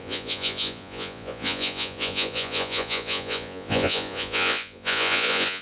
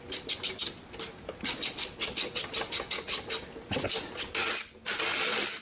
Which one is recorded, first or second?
second